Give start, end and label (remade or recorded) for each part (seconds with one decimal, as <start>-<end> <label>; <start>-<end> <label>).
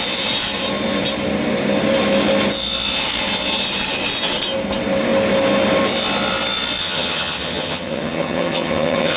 0.0-6.8 recorded; 6.8-9.2 remade